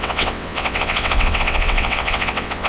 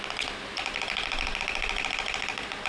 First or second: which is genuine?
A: second